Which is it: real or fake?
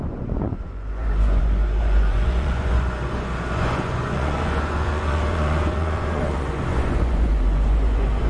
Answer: fake